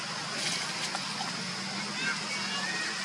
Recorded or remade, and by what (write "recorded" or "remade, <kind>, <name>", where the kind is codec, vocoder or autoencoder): recorded